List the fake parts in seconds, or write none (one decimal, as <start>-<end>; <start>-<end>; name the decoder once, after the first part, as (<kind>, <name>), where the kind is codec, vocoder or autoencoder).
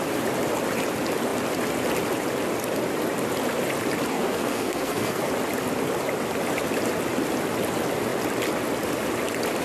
4.1-5.3 (codec, SNAC)